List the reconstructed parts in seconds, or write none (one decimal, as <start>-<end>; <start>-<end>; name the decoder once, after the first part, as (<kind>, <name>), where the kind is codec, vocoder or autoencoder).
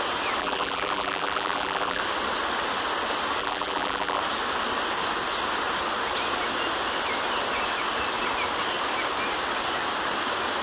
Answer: 0.4-2.0 (vocoder, BigVGAN v2); 3.4-4.2